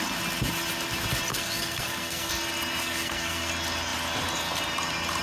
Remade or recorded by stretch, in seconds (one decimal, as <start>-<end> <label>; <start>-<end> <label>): 0.0-1.3 recorded; 1.3-2.3 remade; 2.3-2.8 recorded; 2.8-3.5 remade; 3.5-5.2 recorded